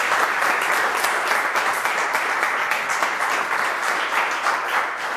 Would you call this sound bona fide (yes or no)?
yes